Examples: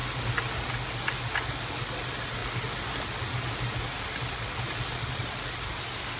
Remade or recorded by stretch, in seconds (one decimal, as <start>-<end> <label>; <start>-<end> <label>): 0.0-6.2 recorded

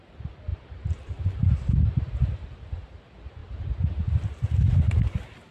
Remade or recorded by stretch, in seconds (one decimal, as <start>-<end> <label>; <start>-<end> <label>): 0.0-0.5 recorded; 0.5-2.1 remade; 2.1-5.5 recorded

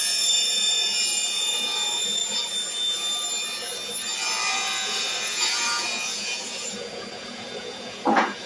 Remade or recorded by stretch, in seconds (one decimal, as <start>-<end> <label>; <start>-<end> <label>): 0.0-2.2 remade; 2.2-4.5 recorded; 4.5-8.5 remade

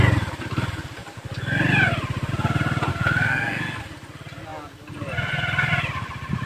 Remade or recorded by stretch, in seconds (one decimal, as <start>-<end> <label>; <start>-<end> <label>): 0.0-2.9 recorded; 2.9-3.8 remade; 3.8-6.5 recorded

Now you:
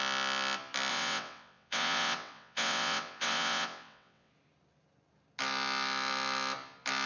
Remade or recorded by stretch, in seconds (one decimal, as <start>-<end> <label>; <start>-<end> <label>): 0.0-0.9 recorded; 0.9-4.3 remade; 4.3-7.1 recorded

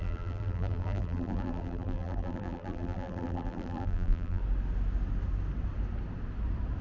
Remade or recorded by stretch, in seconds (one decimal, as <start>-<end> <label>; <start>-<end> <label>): 0.0-4.4 remade; 4.4-6.8 recorded

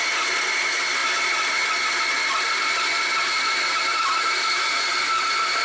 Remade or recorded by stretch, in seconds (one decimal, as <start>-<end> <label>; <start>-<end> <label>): 0.0-5.6 recorded

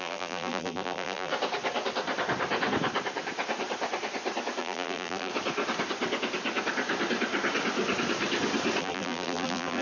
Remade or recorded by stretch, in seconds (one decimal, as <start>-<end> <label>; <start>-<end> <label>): 0.0-1.3 remade; 1.3-4.6 recorded; 4.6-5.3 remade; 5.3-8.8 recorded; 8.8-9.8 remade